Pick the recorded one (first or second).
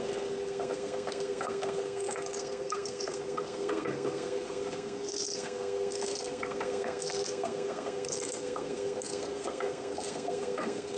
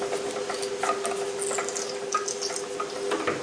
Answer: second